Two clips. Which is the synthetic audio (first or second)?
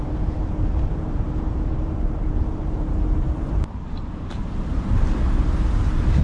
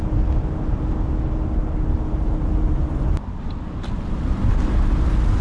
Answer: first